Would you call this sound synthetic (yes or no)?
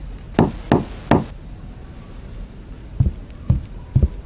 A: no